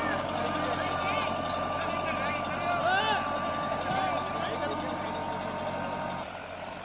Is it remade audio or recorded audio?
recorded